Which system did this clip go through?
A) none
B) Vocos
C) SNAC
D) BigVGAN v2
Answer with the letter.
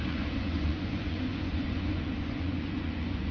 B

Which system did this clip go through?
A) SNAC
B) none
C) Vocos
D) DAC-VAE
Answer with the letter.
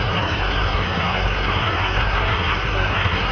A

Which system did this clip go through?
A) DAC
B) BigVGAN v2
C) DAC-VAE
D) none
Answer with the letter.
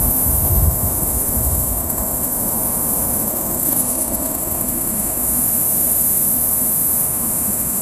C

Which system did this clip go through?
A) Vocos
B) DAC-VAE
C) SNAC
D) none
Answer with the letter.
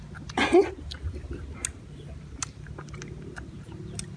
D